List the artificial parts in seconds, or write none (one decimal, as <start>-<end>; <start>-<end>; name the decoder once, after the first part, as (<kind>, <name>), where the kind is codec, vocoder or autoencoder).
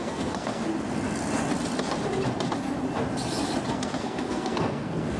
0.0-0.6 (codec, SNAC); 3.7-5.2